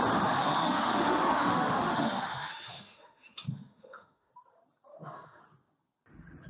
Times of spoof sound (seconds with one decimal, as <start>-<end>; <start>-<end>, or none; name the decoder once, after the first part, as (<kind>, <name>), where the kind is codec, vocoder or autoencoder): 0.4-4.3 (autoencoder, DAC-VAE); 4.9-5.4